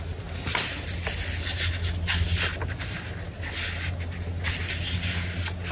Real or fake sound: real